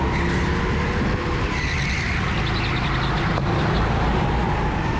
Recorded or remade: recorded